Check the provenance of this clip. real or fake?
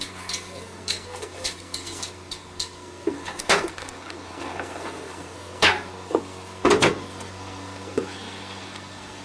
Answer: fake